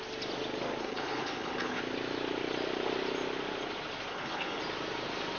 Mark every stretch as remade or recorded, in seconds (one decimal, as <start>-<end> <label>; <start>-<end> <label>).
0.0-0.8 recorded; 0.8-1.8 remade; 1.8-4.1 recorded; 4.1-4.6 remade; 4.6-5.4 recorded